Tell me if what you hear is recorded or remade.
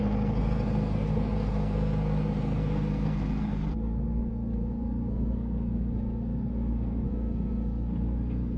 remade